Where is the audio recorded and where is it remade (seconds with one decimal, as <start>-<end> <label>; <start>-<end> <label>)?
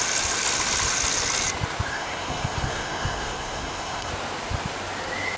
0.0-1.9 recorded; 1.9-4.1 remade; 4.1-5.4 recorded